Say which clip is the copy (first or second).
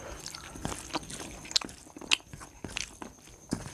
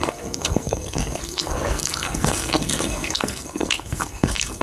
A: second